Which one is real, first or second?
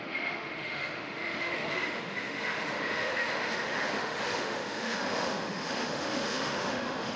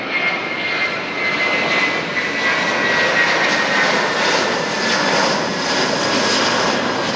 second